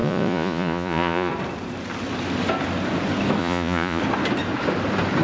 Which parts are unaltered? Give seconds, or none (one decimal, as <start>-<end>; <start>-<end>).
1.3-3.4; 4.0-5.2